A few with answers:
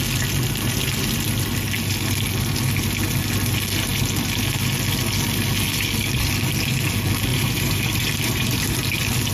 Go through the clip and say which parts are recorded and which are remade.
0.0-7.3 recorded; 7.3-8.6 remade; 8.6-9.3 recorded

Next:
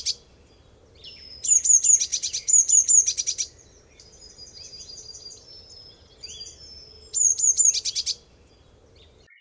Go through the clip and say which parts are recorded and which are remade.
0.0-9.4 recorded

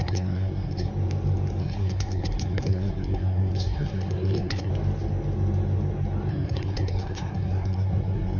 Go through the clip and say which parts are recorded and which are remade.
0.0-0.9 remade; 0.9-1.6 recorded; 1.6-4.7 remade; 4.7-6.3 recorded; 6.3-8.4 remade